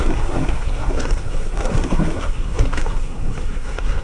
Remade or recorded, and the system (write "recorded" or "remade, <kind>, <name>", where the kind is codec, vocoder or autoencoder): remade, codec, SNAC